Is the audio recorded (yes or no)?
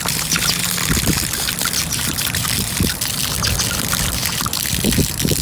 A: yes